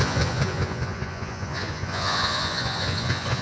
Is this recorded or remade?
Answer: remade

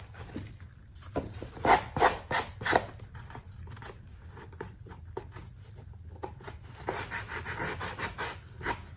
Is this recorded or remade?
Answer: recorded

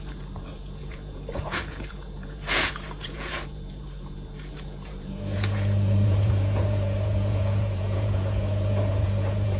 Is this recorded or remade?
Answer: remade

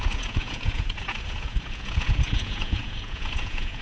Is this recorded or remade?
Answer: remade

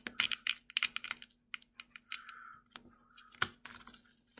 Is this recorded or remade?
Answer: recorded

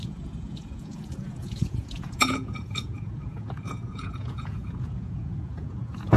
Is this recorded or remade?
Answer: remade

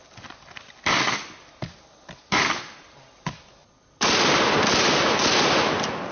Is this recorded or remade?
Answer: recorded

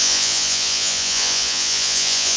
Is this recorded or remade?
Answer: remade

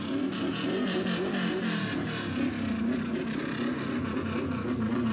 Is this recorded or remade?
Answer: recorded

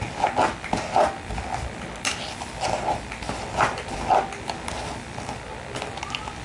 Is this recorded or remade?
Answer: recorded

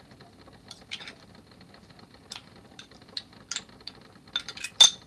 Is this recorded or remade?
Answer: recorded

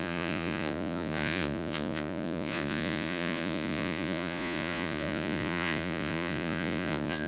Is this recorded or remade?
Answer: remade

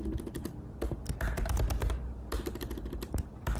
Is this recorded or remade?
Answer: recorded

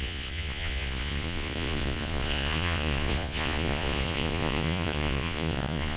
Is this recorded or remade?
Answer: remade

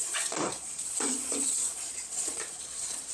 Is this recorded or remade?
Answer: remade